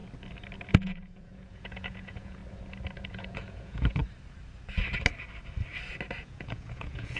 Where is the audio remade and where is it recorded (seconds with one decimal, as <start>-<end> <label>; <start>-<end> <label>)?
0.0-0.7 recorded; 0.7-2.4 remade; 2.4-3.1 recorded; 3.1-4.0 remade; 4.0-6.2 recorded; 6.2-7.2 remade